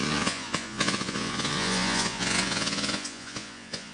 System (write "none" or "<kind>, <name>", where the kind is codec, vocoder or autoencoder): vocoder, Vocos